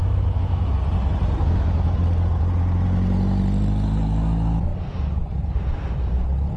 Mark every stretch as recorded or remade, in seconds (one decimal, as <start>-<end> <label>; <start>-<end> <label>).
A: 0.0-0.7 remade; 0.7-6.6 recorded